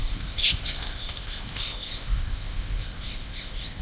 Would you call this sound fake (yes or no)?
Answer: yes